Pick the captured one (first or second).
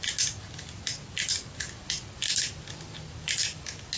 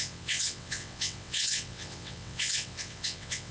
first